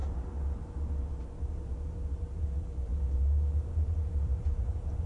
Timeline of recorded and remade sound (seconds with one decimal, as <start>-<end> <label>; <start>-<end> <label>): 0.0-1.4 recorded; 1.4-5.1 remade